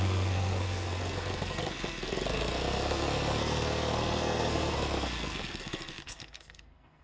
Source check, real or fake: fake